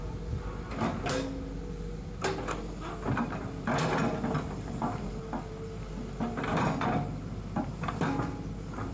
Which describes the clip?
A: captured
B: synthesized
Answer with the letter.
A